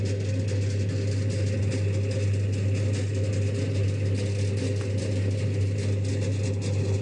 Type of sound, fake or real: real